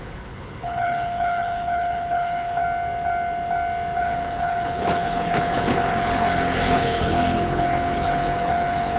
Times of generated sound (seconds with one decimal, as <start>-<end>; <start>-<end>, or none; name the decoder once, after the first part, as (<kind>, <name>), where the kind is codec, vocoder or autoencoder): 0.0-2.6 (codec, HILCodec); 4.0-9.0